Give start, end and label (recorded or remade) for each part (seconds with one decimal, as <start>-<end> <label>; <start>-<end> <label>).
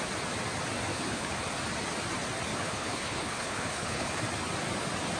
0.0-0.9 recorded; 0.9-1.4 remade; 1.4-2.5 recorded; 2.5-4.2 remade; 4.2-5.2 recorded